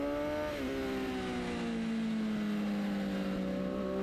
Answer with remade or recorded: recorded